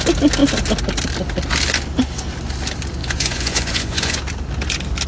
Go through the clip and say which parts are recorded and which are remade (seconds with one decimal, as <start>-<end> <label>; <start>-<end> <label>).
0.0-3.0 recorded; 3.0-4.2 remade; 4.2-5.1 recorded